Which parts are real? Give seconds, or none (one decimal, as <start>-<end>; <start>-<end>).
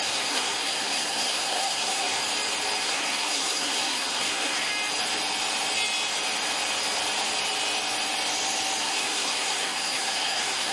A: 2.2-2.8; 4.7-8.8